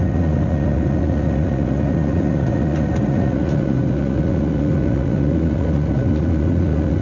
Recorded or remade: remade